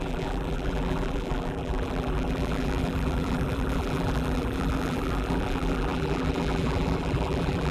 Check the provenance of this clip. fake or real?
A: fake